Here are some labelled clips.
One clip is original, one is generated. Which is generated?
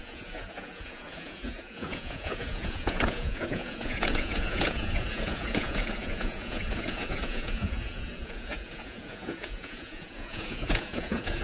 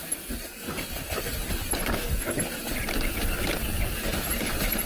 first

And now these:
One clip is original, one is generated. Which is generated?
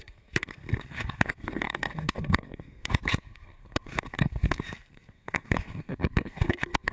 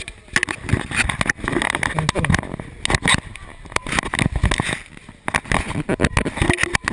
first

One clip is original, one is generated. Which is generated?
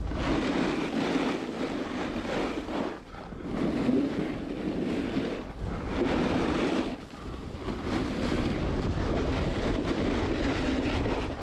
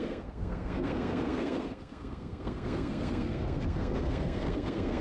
second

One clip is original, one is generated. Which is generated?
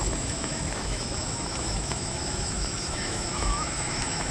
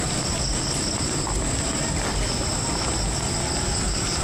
first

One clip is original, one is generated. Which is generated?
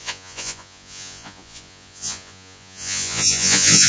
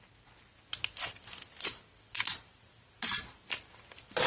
first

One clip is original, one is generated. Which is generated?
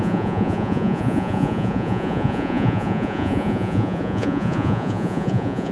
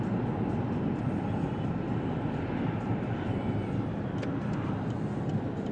first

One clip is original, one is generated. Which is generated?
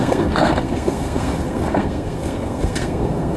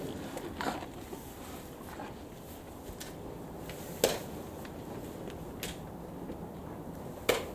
first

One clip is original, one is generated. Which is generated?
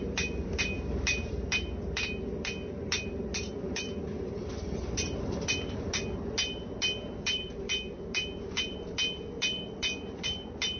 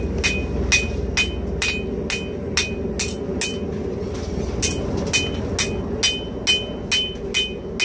first